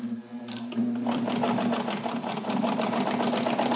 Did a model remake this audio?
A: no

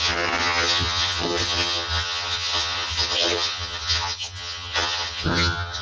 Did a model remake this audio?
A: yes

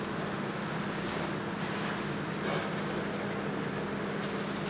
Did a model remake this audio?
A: no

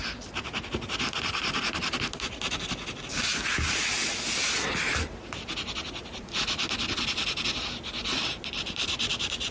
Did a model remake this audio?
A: no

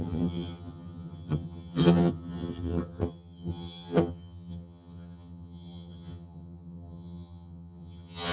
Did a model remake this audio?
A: yes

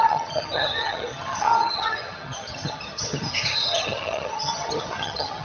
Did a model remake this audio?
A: yes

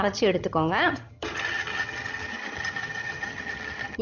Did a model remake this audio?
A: yes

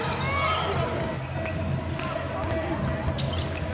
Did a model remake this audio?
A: no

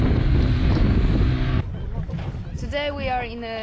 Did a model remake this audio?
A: no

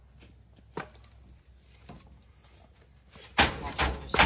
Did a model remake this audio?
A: no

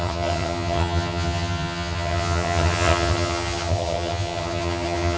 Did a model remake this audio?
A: yes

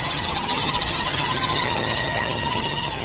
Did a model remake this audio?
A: yes